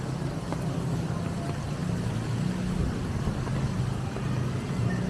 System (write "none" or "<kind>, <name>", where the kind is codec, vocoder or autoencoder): none